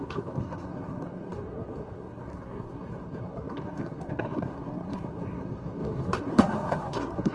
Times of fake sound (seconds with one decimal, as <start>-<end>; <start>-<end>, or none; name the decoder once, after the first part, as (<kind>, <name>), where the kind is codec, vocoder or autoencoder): 0.0-7.3 (codec, SNAC)